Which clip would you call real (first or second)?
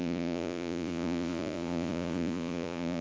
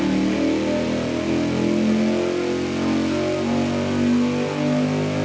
second